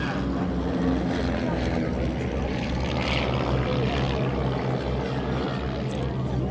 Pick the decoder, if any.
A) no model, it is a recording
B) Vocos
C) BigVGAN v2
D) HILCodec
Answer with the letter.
A